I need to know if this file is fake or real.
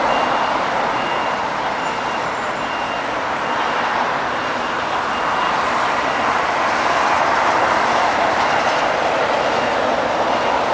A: real